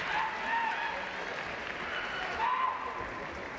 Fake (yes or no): no